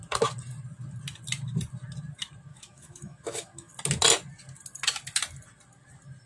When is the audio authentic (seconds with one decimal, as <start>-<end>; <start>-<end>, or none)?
0.0-2.5; 3.7-6.3